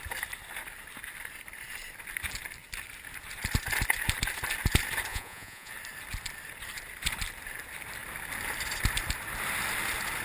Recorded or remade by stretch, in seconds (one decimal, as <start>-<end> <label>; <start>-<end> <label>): 0.0-5.1 recorded; 5.1-5.7 remade; 5.7-10.2 recorded